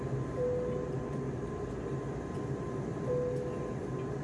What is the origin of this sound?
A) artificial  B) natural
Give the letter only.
B